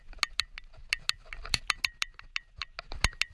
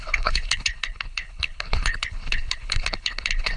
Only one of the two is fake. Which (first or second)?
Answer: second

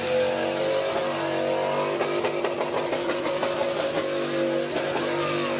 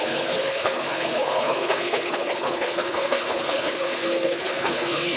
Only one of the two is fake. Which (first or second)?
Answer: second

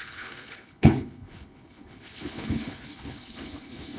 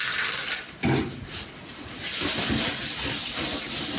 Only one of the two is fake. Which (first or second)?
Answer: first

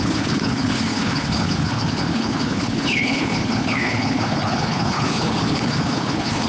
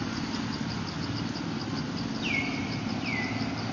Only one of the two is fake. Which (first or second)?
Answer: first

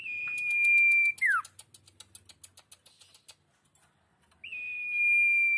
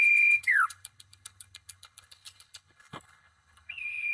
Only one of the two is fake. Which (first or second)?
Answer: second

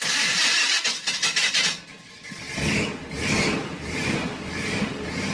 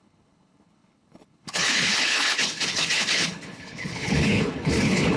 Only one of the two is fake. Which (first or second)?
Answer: second